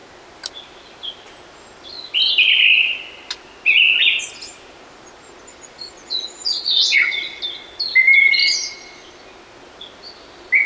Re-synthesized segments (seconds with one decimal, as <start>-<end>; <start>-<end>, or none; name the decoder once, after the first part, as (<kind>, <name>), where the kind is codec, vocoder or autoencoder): 5.5-7.4 (vocoder, Vocos)